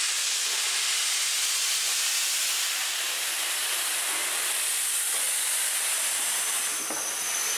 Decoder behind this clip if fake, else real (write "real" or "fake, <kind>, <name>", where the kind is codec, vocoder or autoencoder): real